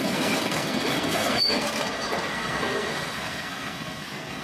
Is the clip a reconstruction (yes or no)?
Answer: yes